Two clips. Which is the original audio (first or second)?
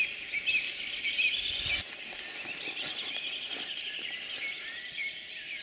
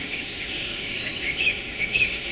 first